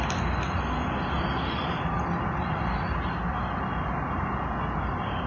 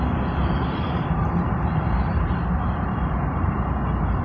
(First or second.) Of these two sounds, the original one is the first